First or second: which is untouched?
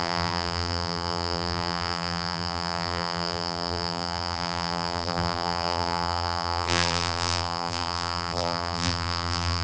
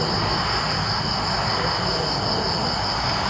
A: second